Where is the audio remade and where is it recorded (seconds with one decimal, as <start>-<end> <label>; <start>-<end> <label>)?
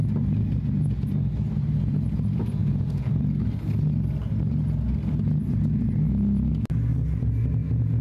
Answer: 0.0-2.6 recorded; 2.6-3.1 remade; 3.1-8.0 recorded